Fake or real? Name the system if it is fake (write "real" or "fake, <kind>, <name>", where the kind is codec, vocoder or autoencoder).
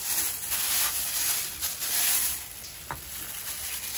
real